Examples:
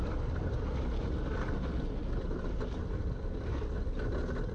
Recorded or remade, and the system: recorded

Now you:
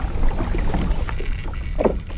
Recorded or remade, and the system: recorded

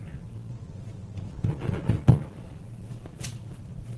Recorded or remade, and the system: remade, vocoder, Vocos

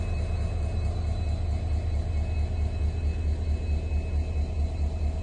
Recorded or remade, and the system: recorded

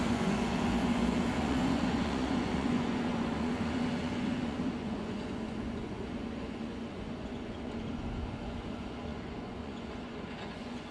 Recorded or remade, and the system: remade, vocoder, Vocos